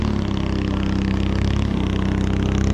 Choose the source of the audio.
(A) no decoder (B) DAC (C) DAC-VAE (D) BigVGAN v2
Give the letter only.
A